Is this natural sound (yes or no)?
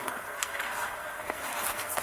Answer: no